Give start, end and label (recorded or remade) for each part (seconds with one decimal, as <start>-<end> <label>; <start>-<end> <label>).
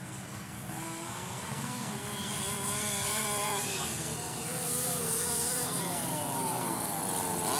0.0-7.0 remade; 7.0-7.6 recorded